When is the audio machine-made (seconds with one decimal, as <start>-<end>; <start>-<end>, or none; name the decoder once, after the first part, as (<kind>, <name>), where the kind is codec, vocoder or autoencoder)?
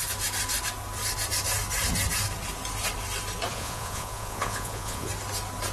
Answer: 3.5-5.1 (vocoder, Vocos)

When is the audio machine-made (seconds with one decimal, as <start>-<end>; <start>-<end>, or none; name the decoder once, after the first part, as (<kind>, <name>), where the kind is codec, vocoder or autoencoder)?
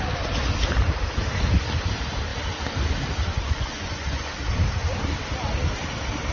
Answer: 3.3-4.3 (vocoder, Vocos)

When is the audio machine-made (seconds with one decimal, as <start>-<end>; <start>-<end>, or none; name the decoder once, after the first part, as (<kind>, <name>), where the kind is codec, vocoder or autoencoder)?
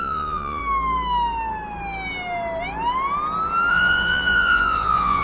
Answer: 0.0-0.6 (vocoder, Vocos); 3.7-5.2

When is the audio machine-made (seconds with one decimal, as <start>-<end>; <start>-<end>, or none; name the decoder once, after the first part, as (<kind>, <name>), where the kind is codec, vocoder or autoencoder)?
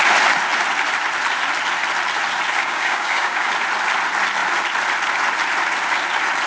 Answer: 2.6-3.5 (codec, DAC)